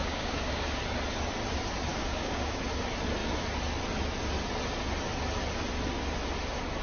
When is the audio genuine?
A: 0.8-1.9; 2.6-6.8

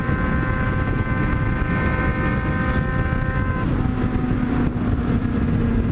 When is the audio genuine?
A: 0.0-5.9